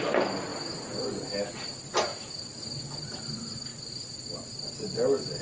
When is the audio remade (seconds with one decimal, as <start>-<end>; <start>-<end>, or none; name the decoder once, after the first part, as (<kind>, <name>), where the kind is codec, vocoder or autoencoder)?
none